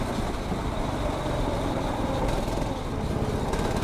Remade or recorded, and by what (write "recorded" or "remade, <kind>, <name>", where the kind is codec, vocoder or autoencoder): recorded